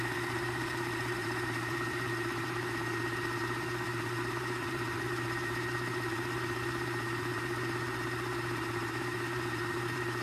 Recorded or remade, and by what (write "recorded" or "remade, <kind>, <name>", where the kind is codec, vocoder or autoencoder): remade, vocoder, BigVGAN v2